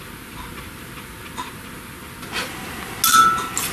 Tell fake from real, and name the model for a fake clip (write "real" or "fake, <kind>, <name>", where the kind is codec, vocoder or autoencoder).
real